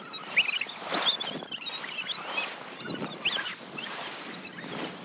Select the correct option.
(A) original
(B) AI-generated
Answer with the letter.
A